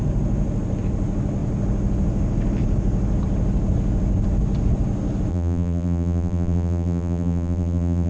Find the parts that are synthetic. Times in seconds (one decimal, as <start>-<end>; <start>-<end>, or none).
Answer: 5.3-8.1